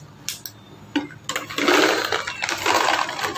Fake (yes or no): no